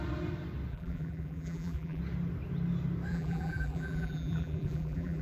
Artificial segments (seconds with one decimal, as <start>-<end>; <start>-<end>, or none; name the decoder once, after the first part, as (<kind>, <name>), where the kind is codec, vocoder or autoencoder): 0.7-2.0 (vocoder, BigVGAN v2); 3.1-5.2